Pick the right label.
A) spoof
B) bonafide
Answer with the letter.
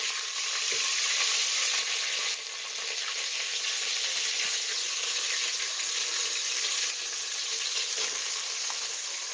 B